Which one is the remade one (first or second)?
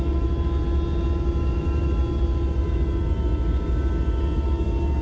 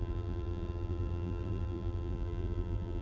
second